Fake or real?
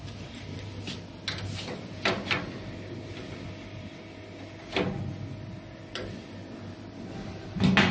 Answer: real